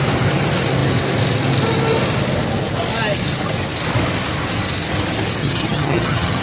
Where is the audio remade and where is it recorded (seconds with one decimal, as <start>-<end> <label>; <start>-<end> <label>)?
0.0-5.4 recorded; 5.4-6.4 remade